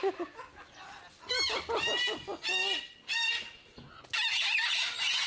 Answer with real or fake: real